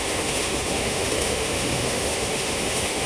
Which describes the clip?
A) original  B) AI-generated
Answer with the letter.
B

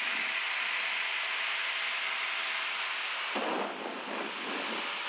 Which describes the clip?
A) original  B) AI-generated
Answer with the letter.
A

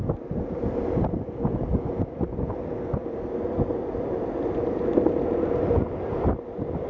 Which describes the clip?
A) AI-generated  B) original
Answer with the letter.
B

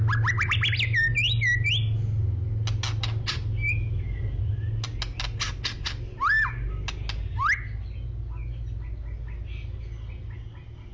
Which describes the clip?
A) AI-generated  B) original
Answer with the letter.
B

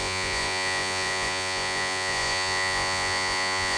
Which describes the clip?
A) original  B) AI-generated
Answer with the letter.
B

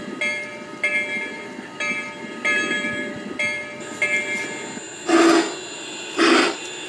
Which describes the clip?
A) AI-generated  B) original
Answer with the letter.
B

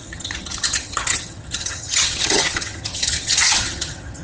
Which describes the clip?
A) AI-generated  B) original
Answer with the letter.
A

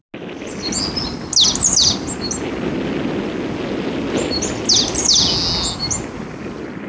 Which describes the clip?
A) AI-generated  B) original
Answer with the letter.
B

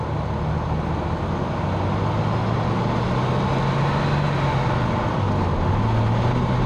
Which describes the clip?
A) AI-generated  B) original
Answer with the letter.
B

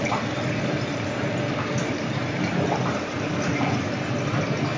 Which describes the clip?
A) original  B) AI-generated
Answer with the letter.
A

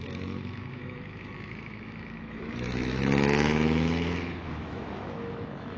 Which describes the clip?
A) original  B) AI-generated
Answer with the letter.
B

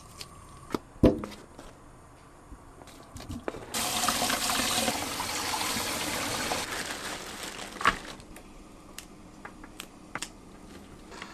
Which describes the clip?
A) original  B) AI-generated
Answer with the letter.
A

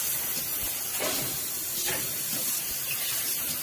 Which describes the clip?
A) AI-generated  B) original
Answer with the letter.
B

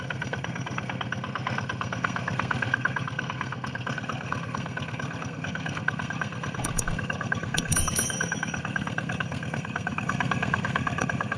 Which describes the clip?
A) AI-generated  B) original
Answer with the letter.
A